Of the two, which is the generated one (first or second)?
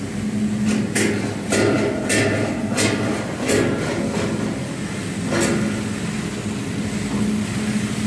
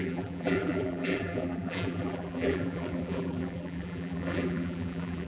second